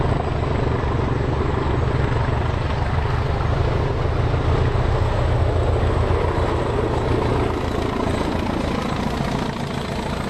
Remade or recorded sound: recorded